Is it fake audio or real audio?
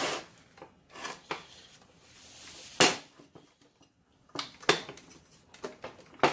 real